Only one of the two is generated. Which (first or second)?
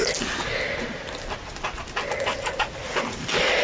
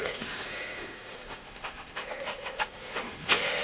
second